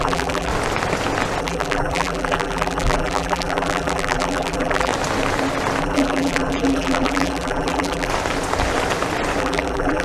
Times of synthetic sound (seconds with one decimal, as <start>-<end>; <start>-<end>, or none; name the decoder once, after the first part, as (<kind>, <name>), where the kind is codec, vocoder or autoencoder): 0.0-0.5 (vocoder, BigVGAN v2); 1.4-4.9; 5.8-8.1; 9.4-10.0